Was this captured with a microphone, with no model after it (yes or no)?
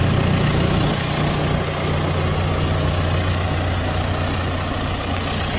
yes